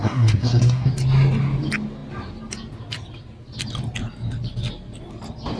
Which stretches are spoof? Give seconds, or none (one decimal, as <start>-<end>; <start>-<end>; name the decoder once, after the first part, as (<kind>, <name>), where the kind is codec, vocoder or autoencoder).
0.0-0.9 (codec, SNAC)